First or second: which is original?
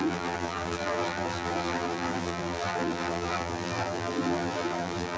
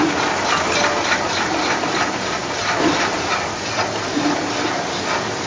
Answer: second